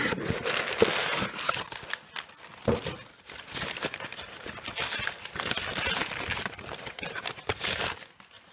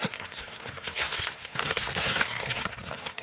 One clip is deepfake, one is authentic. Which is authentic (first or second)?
first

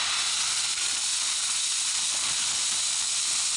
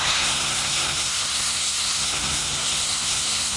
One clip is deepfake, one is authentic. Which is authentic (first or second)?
first